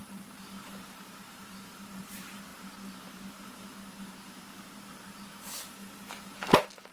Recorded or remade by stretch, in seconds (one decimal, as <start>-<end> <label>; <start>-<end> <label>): 0.0-2.5 remade; 2.5-3.0 recorded; 3.0-3.8 remade; 3.8-6.9 recorded